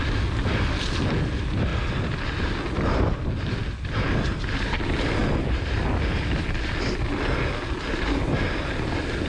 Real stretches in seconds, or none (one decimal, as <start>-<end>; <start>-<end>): 0.0-9.3